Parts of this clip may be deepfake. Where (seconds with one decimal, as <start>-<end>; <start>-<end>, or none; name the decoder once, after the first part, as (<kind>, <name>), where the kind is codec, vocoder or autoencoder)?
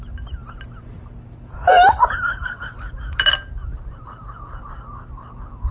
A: none